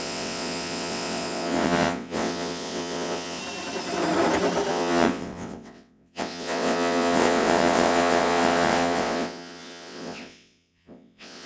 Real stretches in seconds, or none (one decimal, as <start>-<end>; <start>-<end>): 3.4-4.7